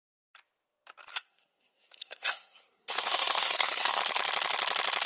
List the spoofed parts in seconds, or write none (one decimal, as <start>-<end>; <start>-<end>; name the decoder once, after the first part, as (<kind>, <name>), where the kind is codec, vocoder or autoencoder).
1.1-4.0 (codec, SNAC)